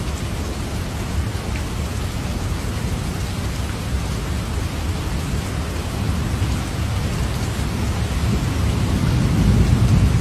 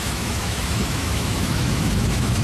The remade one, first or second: second